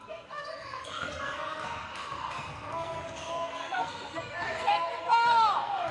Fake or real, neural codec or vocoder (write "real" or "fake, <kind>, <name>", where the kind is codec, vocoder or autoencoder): fake, codec, SNAC